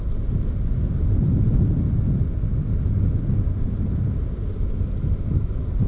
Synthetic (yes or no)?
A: no